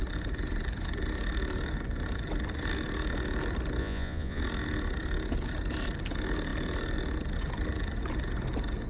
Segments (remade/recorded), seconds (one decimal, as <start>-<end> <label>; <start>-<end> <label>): 0.0-3.8 recorded; 3.8-4.4 remade; 4.4-8.9 recorded